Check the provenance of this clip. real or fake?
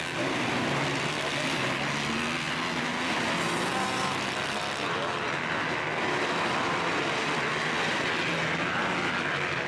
real